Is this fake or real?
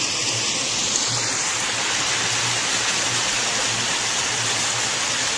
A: real